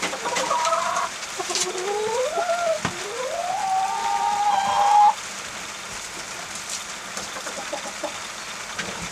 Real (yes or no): yes